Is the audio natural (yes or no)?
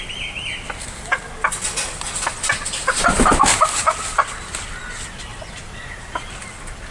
yes